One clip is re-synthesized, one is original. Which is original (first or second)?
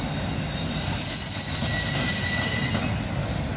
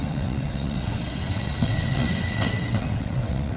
first